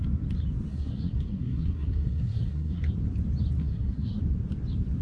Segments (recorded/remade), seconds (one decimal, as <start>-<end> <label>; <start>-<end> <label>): 0.0-0.7 recorded; 0.7-2.9 remade; 2.9-3.6 recorded; 3.6-4.2 remade; 4.2-5.0 recorded